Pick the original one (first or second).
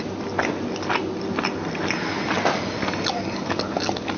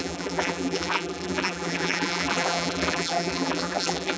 first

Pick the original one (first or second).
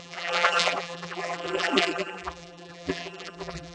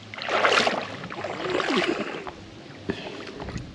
second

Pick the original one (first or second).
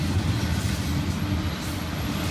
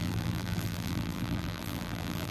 first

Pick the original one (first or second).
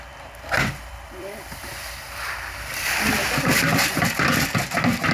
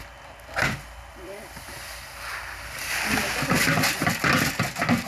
second